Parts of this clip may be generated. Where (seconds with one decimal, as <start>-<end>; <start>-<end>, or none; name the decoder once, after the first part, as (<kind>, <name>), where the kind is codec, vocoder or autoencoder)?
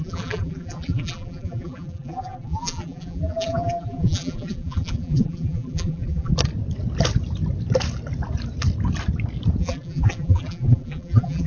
0.0-6.3 (vocoder, BigVGAN v2); 9.6-11.5